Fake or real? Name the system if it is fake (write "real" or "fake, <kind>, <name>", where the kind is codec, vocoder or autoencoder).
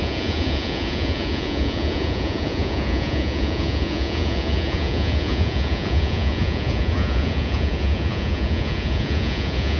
fake, vocoder, Vocos